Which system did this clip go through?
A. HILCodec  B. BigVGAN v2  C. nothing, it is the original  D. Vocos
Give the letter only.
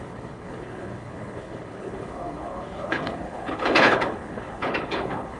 A